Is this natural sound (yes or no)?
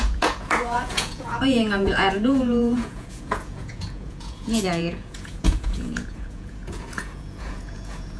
no